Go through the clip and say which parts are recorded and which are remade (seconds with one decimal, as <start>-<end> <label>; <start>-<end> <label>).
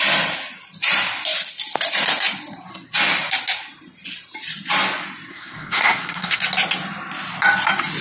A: 0.0-5.3 recorded; 5.3-6.4 remade; 6.4-8.0 recorded